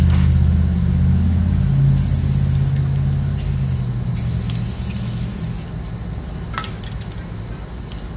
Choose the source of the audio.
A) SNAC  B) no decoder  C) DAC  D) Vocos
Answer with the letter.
B